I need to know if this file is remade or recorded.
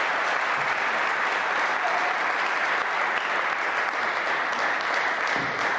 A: recorded